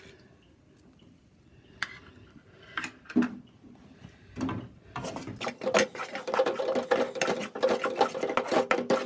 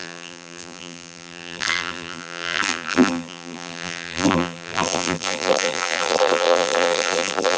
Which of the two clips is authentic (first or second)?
first